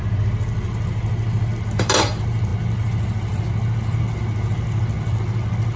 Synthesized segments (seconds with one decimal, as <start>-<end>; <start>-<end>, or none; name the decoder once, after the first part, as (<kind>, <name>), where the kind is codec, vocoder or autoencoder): none